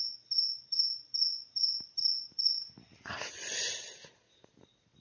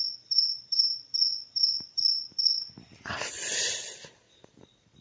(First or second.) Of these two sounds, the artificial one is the second